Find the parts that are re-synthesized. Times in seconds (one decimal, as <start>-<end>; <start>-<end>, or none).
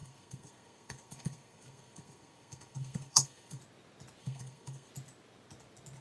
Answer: 0.0-3.6; 4.2-4.9